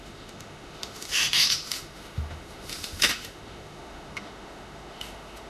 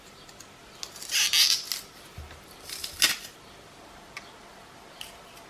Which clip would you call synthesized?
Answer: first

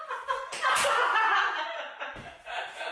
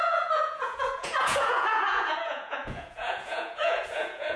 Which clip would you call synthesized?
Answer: second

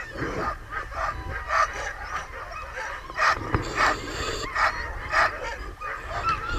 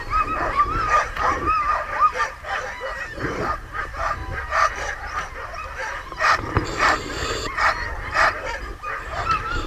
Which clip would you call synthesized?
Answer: second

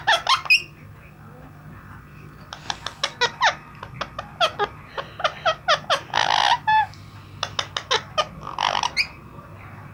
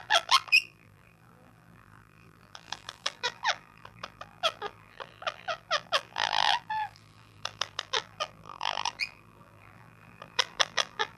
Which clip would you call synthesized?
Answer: second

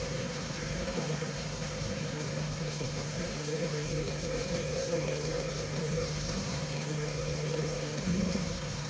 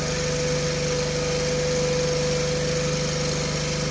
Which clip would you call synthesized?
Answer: first